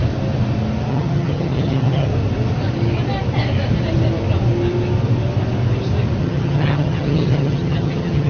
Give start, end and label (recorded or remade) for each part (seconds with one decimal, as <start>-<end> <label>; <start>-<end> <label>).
0.0-0.9 recorded; 0.9-2.1 remade; 2.1-6.2 recorded; 6.2-8.3 remade